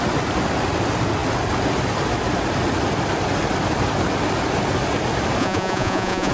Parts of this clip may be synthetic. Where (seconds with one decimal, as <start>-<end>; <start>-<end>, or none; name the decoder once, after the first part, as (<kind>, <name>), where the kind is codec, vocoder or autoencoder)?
5.4-6.3 (vocoder, Vocos)